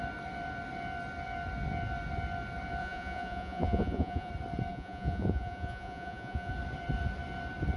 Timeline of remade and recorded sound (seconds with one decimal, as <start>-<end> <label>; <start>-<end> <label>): 0.0-2.8 recorded; 2.8-4.3 remade; 4.3-4.7 recorded; 4.7-6.5 remade; 6.5-7.8 recorded